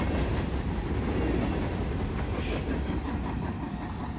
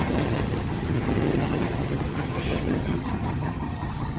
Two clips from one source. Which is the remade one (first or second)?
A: second